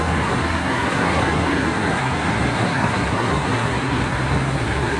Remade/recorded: remade